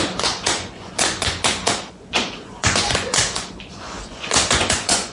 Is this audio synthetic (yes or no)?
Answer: yes